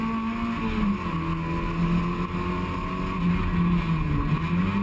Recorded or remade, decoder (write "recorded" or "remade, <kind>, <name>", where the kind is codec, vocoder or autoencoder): recorded